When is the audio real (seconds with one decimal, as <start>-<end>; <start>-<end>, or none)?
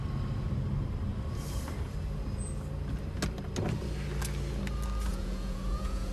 0.0-5.1